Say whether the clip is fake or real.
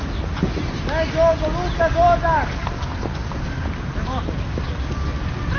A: real